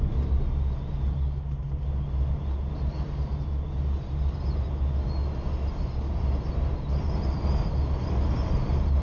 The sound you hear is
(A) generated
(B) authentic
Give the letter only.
B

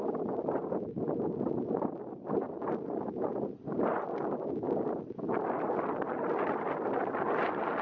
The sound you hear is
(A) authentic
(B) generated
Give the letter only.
A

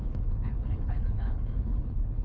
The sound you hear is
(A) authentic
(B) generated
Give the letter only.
B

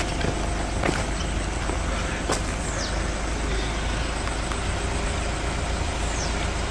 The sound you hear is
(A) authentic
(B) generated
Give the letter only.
A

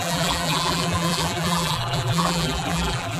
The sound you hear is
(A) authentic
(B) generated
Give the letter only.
B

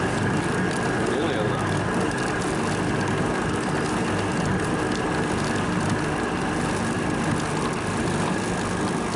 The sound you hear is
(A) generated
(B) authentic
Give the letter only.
B